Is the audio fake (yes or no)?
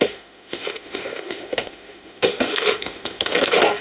yes